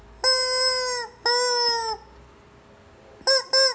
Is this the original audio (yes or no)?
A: yes